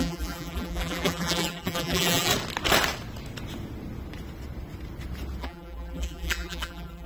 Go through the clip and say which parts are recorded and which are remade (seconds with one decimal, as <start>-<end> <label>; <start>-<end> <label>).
0.0-2.3 remade; 2.3-5.4 recorded; 5.4-7.1 remade

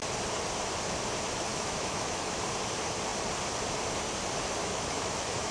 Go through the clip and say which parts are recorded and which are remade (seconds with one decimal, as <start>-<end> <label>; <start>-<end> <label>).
0.0-1.5 recorded; 1.5-2.4 remade; 2.4-4.6 recorded; 4.6-5.5 remade

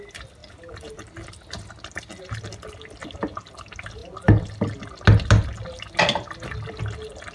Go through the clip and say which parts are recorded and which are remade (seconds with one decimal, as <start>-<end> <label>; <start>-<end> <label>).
0.0-7.3 recorded

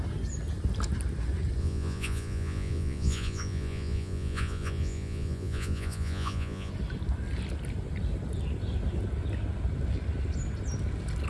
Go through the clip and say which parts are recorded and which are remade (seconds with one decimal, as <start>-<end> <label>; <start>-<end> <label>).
0.0-1.6 recorded; 1.6-6.7 remade; 6.7-11.3 recorded

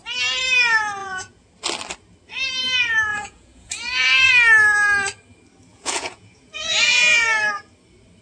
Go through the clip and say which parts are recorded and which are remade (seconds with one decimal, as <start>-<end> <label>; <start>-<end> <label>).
0.0-1.0 recorded; 1.0-1.5 remade; 1.5-3.1 recorded; 3.1-4.3 remade; 4.3-5.7 recorded; 5.7-7.2 remade; 7.2-8.2 recorded

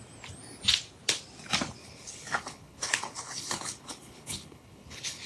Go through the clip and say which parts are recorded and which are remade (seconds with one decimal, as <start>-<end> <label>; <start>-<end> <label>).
0.0-1.8 recorded; 1.8-5.3 remade

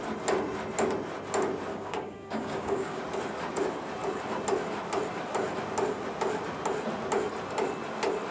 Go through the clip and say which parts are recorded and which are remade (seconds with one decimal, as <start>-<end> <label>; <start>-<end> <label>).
0.0-1.7 recorded; 1.7-3.0 remade; 3.0-8.3 recorded